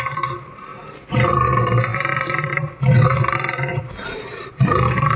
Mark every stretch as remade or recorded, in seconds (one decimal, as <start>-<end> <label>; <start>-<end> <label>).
0.0-5.2 remade